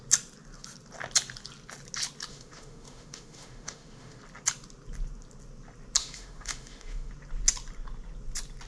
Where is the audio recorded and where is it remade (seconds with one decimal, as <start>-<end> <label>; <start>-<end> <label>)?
0.0-2.3 recorded; 2.3-4.2 remade; 4.2-6.0 recorded; 6.0-7.1 remade; 7.1-8.7 recorded